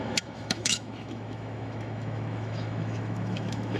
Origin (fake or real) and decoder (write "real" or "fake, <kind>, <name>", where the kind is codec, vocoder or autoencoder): fake, autoencoder, DAC-VAE